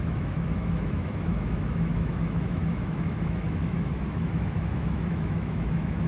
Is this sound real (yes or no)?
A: no